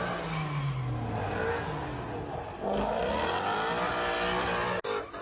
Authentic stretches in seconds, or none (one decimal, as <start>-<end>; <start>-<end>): 0.0-5.2